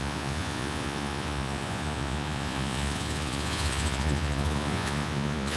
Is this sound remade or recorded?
remade